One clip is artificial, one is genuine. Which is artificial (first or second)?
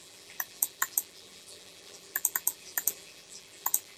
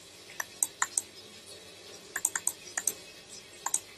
first